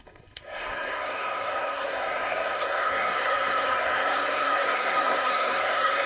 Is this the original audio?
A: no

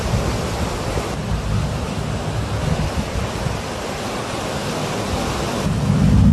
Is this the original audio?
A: yes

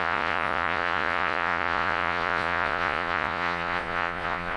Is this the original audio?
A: no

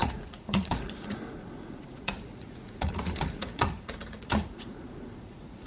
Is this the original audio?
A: no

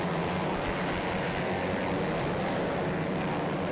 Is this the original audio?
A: yes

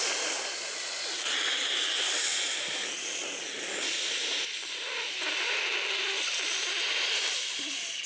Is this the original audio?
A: yes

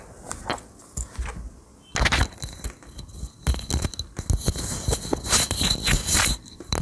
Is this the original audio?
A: yes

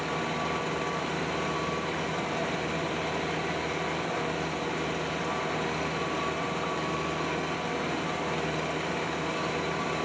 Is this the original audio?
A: yes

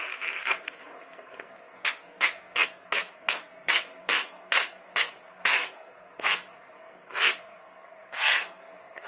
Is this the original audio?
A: no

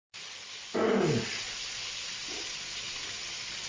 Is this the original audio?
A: yes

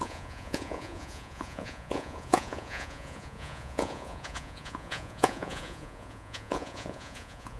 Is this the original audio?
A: no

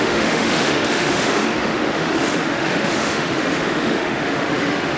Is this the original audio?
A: no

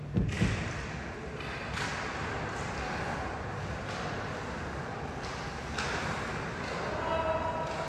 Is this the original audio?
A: yes